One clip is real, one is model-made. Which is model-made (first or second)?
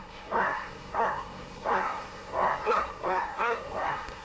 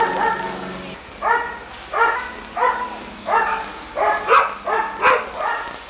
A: first